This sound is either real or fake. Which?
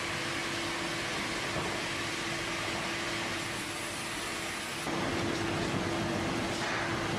real